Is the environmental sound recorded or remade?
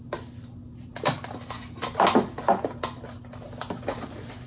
recorded